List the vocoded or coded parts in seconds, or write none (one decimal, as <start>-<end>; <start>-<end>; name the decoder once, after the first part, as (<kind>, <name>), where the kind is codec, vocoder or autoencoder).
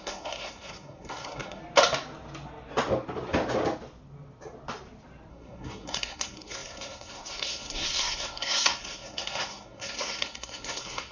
0.0-1.6 (codec, SNAC); 5.3-11.1